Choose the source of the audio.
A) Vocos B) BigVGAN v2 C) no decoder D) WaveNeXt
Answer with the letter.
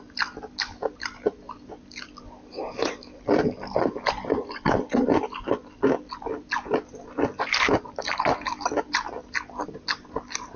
C